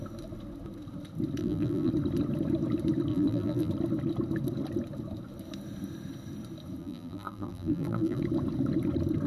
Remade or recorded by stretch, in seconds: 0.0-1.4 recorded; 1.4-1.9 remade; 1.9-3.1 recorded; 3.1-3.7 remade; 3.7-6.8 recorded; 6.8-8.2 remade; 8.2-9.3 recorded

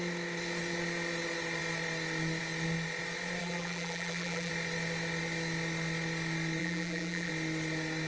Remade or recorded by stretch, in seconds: 0.0-3.4 recorded; 3.4-4.5 remade; 4.5-6.6 recorded; 6.6-7.3 remade; 7.3-8.1 recorded

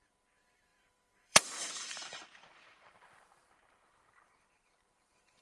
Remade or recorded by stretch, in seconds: 0.0-5.4 remade

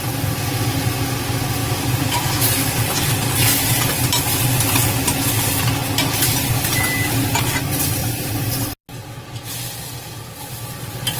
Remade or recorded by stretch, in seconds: 0.0-1.6 recorded; 1.6-2.4 remade; 2.4-8.0 recorded; 8.0-8.5 remade; 8.5-9.0 recorded; 9.0-10.2 remade; 10.2-11.2 recorded

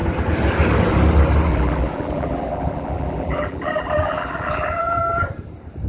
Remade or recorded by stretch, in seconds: 0.0-1.5 recorded; 1.5-5.0 remade; 5.0-5.9 recorded

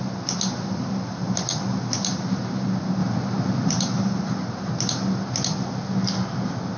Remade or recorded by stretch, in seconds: 0.0-3.0 recorded; 3.0-3.8 remade; 3.8-6.8 recorded

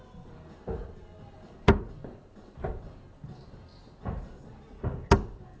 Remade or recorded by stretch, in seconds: 0.0-5.6 recorded